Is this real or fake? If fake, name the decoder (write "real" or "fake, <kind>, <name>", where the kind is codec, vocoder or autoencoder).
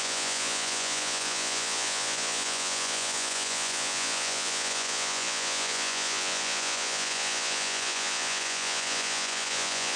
fake, vocoder, Vocos